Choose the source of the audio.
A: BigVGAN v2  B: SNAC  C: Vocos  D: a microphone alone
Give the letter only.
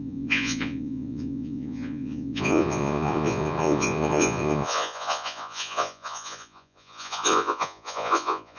C